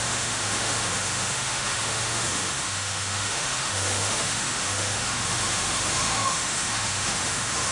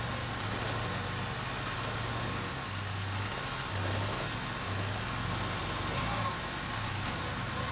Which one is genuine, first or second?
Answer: second